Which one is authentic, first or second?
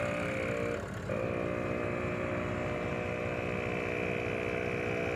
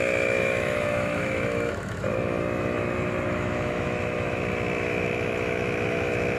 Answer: first